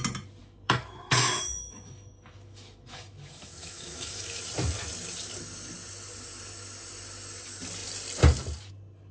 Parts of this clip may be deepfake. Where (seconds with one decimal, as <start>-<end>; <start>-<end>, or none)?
0.4-4.4